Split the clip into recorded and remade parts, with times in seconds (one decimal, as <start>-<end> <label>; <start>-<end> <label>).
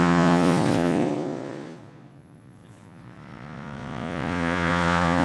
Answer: 0.0-5.2 remade